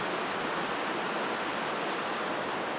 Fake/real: real